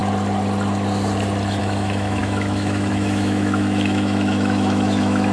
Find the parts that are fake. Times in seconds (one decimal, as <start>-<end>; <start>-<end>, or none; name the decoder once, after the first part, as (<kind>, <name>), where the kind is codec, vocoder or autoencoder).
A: 1.6-5.3 (autoencoder, DAC-VAE)